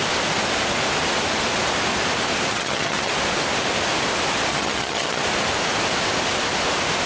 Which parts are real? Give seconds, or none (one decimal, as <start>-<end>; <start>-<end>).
0.0-2.5; 3.1-4.5; 5.2-7.1